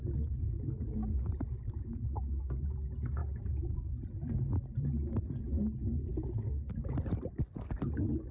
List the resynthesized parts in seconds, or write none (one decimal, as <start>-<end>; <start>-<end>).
none